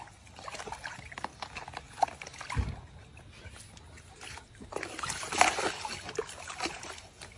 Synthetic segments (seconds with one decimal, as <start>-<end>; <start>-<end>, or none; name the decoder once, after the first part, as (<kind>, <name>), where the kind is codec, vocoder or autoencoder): none